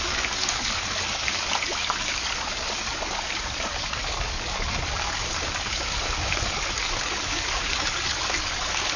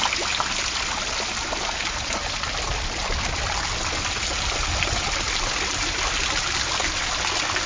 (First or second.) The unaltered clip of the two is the second